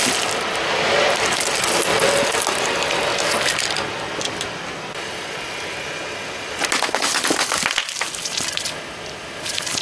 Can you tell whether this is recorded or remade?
recorded